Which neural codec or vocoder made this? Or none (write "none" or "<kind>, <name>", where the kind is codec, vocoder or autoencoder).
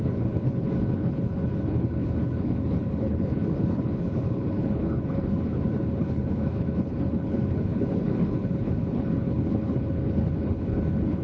codec, HILCodec